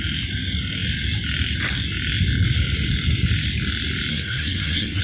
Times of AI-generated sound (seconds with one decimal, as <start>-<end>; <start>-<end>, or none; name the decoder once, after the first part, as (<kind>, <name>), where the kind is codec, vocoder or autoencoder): 4.1-5.0 (codec, SNAC)